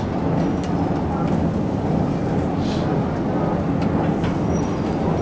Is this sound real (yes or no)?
yes